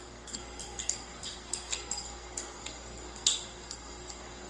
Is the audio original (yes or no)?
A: no